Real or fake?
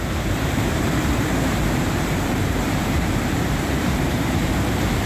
fake